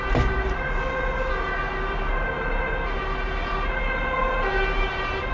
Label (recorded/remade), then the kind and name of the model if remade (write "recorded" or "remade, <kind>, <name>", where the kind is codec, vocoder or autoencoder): recorded